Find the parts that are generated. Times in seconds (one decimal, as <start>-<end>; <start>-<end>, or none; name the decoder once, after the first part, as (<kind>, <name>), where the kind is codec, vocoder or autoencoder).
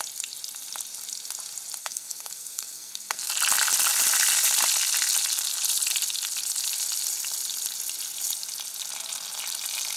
1.8-3.3 (codec, SNAC)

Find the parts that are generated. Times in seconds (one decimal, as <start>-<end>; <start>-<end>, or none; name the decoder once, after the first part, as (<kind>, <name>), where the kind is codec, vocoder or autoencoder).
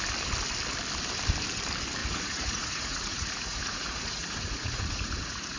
2.0-5.6 (vocoder, Vocos)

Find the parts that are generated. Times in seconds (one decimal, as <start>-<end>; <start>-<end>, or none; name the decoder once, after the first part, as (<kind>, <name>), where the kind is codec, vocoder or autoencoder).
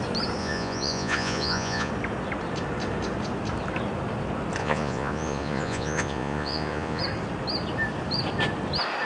0.4-1.9 (vocoder, Vocos); 4.6-7.0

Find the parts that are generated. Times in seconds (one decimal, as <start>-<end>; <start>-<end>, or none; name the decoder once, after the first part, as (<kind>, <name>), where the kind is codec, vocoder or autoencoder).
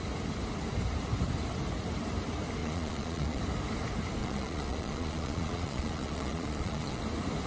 2.6-3.4 (vocoder, Vocos); 4.2-7.0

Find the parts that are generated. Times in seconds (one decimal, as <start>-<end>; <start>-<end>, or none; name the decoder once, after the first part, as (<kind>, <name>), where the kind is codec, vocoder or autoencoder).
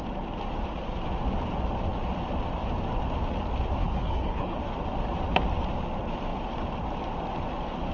3.8-4.6 (codec, HILCodec)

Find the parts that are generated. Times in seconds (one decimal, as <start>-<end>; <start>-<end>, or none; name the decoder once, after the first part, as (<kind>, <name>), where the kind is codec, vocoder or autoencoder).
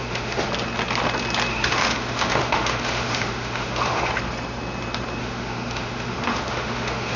0.0-0.5 (autoencoder, DAC-VAE); 1.5-4.1; 5.2-7.2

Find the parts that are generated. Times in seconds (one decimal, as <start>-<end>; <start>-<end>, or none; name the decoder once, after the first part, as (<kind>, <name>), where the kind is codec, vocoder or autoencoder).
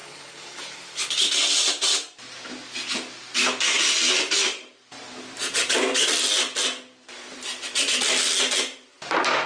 0.0-1.3 (codec, HILCodec)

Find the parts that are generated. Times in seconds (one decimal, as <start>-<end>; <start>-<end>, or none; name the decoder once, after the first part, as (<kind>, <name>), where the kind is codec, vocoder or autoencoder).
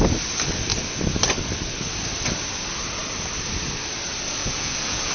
4.4-5.1 (vocoder, Vocos)